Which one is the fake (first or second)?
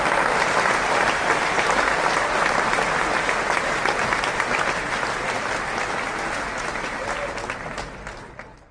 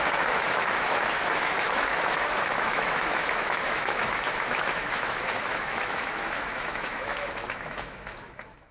second